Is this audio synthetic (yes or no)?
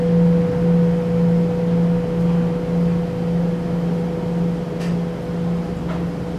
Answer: no